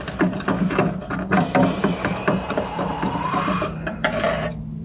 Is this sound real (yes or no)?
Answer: no